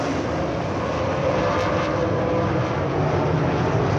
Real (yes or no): yes